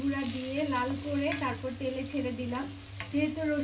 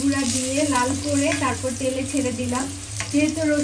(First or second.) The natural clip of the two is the first